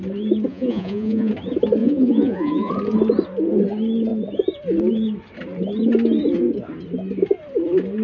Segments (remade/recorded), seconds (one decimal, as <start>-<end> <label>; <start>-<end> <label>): 0.0-0.5 recorded; 0.5-1.3 remade; 1.3-1.8 recorded; 1.8-2.7 remade; 2.7-8.0 recorded